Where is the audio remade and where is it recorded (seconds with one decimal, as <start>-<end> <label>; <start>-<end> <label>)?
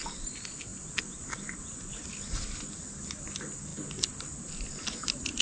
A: 0.0-5.4 recorded